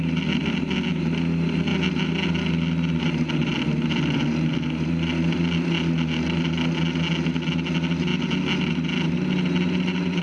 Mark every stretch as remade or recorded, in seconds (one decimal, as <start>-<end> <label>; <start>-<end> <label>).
0.0-10.2 recorded